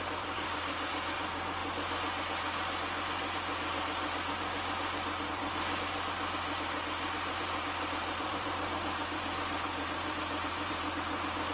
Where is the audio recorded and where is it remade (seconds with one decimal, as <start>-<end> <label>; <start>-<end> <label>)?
0.0-1.6 remade; 1.6-5.3 recorded; 5.3-11.5 remade